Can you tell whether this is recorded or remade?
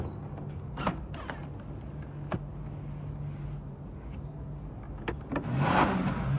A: recorded